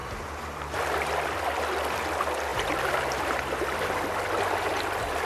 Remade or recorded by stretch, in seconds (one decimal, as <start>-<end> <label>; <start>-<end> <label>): 0.0-1.1 remade; 1.1-2.5 recorded; 2.5-3.2 remade; 3.2-5.3 recorded